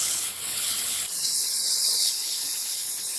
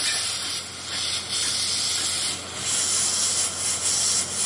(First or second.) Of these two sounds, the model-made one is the first